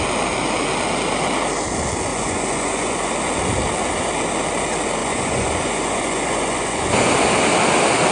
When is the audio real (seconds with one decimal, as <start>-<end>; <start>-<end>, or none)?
0.0-2.1; 3.1-5.0; 7.1-8.1